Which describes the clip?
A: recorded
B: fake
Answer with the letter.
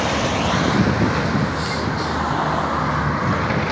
A